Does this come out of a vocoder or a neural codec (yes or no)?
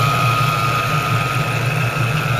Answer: no